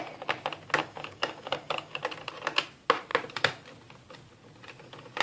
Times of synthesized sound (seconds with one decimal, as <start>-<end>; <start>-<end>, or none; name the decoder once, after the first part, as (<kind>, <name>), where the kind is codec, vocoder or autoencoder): 0.8-2.0 (codec, DAC)